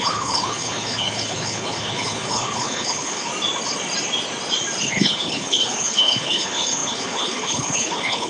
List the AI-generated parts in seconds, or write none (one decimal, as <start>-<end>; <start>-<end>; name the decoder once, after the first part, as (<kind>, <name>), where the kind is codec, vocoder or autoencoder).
0.0-3.3 (codec, HILCodec); 4.8-8.3